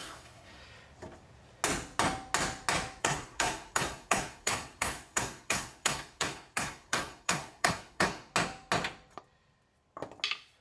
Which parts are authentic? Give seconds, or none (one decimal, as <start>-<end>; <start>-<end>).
0.6-3.0; 8.3-10.6